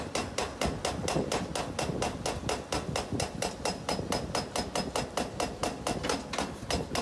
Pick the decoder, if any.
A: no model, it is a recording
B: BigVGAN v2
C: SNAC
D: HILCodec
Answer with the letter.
A